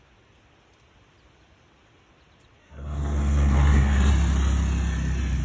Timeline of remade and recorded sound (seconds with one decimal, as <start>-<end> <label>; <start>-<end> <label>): 0.0-2.6 recorded; 2.6-4.1 remade; 4.1-5.4 recorded